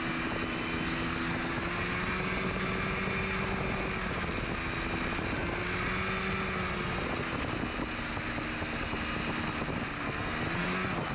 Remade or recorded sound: recorded